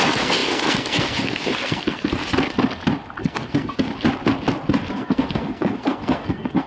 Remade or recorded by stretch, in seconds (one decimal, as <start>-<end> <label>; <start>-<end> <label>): 0.0-2.2 remade; 2.2-3.2 recorded; 3.2-3.9 remade; 3.9-4.9 recorded; 4.9-6.7 remade